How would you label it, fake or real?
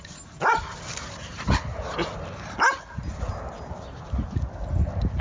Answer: real